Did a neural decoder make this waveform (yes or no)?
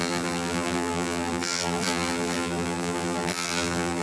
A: yes